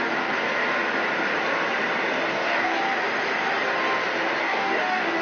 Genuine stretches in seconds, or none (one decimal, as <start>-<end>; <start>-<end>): 0.0-2.3; 2.8-4.4